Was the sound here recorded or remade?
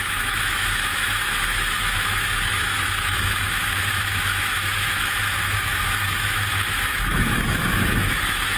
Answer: remade